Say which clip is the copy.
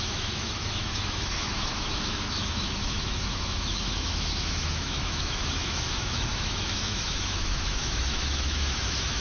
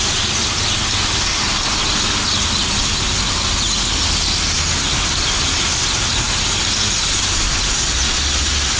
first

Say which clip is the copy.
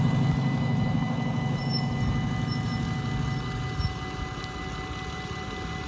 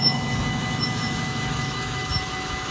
second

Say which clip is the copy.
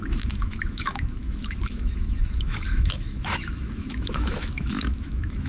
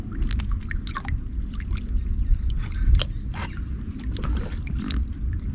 first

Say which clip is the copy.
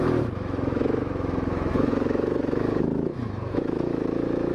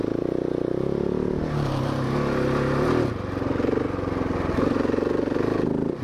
first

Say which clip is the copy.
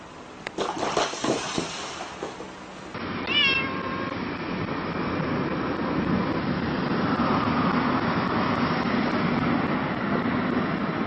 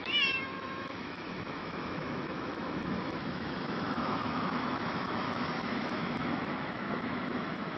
second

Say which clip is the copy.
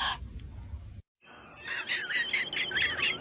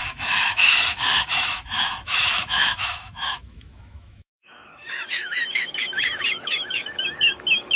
second